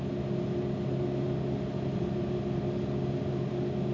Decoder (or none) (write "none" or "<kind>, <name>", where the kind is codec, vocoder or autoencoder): none